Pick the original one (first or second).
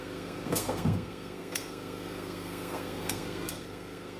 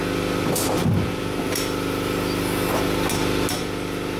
second